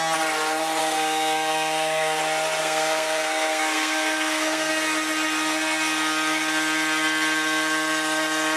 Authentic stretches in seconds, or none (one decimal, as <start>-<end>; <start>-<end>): 0.0-0.8; 2.2-2.6; 4.7-8.6